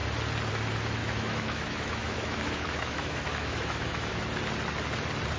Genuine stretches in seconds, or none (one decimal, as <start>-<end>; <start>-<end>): 0.0-1.0; 4.2-5.4